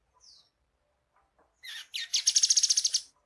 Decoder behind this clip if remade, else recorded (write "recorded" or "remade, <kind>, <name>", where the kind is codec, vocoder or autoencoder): recorded